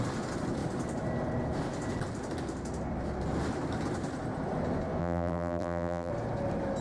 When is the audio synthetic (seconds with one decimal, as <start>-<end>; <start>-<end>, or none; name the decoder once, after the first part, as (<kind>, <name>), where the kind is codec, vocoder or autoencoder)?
5.0-6.1 (vocoder, BigVGAN v2)